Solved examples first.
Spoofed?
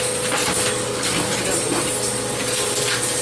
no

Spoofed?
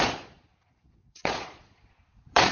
yes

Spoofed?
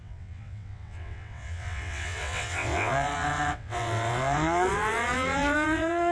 yes